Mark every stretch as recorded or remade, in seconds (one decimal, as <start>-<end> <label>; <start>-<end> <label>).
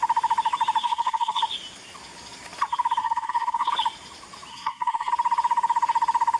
0.0-0.8 recorded; 0.8-1.4 remade; 1.4-3.0 recorded; 3.0-3.7 remade; 3.7-4.5 recorded; 4.5-5.1 remade; 5.1-6.4 recorded